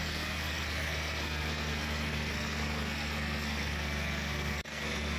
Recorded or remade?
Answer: remade